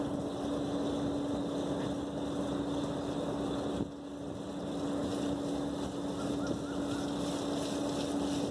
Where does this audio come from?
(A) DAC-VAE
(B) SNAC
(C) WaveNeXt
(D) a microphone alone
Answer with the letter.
D